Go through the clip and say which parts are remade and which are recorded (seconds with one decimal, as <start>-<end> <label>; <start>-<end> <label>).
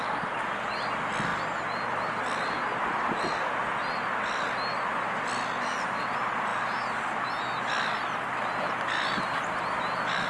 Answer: 0.0-10.3 recorded